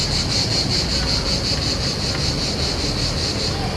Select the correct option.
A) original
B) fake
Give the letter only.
A